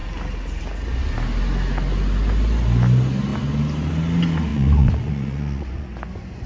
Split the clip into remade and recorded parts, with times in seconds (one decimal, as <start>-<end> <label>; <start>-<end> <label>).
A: 0.0-4.5 recorded; 4.5-6.5 remade